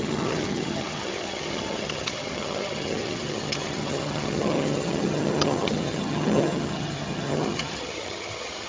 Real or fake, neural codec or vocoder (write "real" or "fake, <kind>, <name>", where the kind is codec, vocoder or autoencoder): fake, vocoder, HiFi-GAN